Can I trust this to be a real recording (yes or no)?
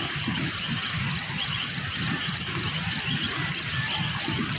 yes